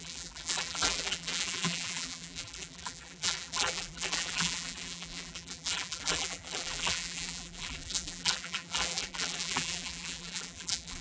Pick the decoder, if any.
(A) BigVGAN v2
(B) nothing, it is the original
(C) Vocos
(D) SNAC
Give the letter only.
A